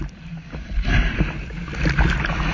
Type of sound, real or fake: real